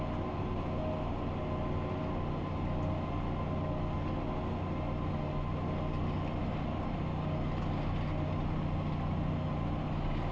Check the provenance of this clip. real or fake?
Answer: real